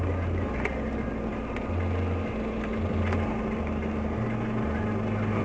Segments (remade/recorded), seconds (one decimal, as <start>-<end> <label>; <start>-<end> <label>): 0.0-1.3 recorded; 1.3-4.4 remade; 4.4-5.4 recorded